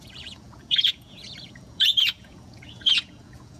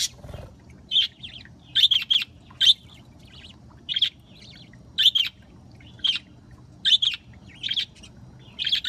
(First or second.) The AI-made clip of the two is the first